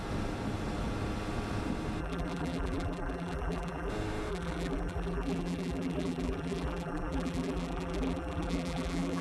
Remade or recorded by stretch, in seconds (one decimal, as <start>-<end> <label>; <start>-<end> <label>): 0.0-2.0 recorded; 2.0-3.9 remade; 3.9-4.3 recorded; 4.3-9.2 remade